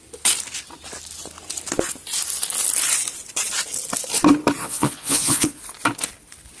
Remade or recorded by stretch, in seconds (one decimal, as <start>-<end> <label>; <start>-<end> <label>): 0.0-4.6 recorded; 4.6-5.6 remade; 5.6-6.6 recorded